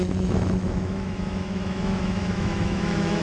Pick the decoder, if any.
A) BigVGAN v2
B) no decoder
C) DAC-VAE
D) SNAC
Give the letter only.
C